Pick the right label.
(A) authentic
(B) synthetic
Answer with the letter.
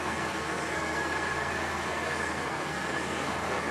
B